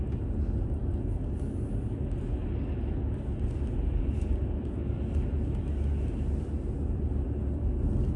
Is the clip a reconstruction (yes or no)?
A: no